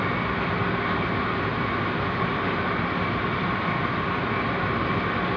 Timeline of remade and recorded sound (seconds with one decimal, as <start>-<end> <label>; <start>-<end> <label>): 0.0-5.4 recorded